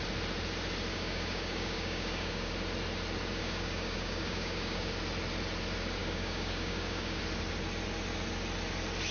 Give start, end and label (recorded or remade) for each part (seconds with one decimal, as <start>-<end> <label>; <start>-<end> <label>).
0.0-0.9 recorded; 0.9-2.5 remade; 2.5-3.4 recorded; 3.4-4.9 remade; 4.9-6.0 recorded; 6.0-7.2 remade; 7.2-9.1 recorded